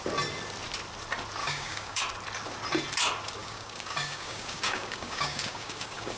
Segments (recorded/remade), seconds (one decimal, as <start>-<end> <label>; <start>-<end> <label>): 0.0-1.4 recorded; 1.4-2.0 remade; 2.0-3.4 recorded; 3.4-6.2 remade